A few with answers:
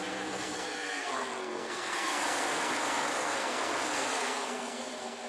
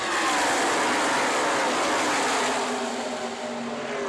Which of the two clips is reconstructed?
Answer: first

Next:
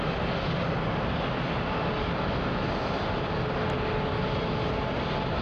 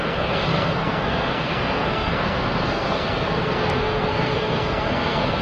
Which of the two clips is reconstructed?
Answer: second